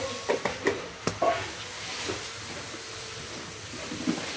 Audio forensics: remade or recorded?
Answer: recorded